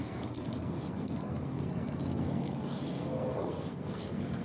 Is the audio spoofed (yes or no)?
yes